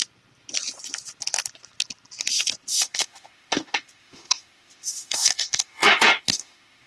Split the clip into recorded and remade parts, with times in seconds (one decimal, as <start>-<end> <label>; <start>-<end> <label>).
0.0-2.7 recorded; 2.7-6.9 remade